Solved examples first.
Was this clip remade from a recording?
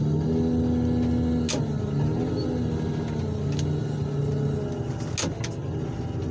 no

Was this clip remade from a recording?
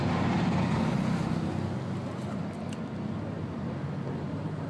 no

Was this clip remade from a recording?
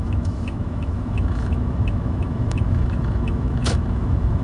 yes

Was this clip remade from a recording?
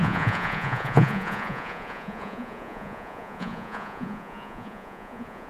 yes